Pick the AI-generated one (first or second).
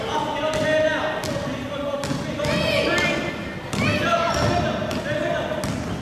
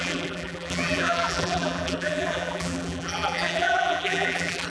second